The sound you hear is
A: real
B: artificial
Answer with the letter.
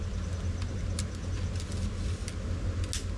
A